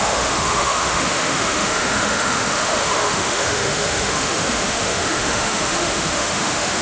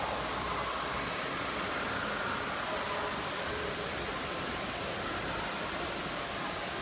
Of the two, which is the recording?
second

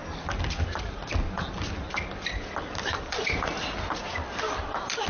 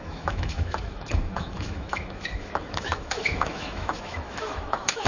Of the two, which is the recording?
first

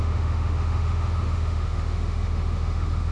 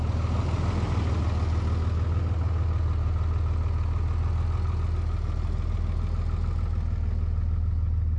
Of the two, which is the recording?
second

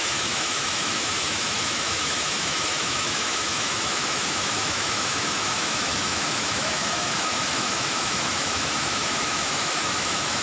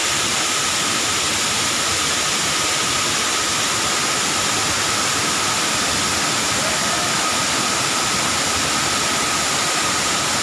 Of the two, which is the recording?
second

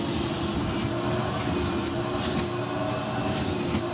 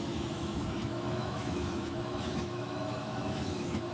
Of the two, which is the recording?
first